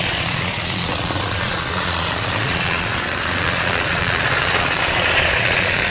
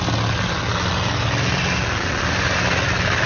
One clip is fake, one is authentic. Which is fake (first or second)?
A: first